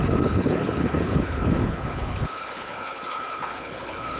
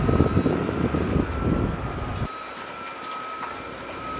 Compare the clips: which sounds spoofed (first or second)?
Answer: first